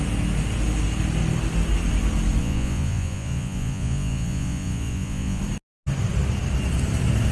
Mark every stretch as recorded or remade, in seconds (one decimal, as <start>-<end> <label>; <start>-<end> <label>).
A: 0.0-2.4 recorded; 2.4-5.4 remade; 5.4-7.3 recorded